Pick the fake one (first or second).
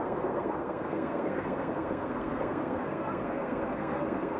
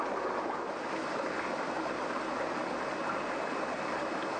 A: first